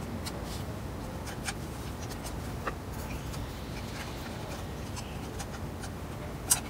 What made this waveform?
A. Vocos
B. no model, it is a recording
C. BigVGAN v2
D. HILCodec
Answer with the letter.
B